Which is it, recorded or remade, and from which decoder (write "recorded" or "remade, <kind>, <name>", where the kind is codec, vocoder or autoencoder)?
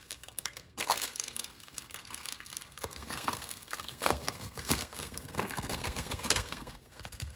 remade, codec, SNAC